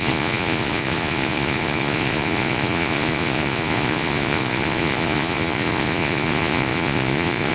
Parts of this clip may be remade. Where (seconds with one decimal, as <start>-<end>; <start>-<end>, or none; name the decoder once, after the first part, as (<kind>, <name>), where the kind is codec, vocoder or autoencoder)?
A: 0.0-7.5 (vocoder, Vocos)